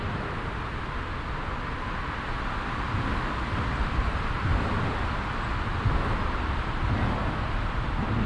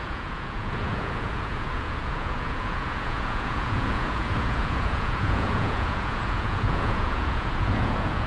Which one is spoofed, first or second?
second